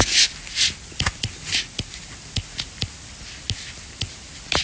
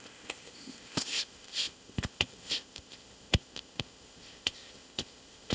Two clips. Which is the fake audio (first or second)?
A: second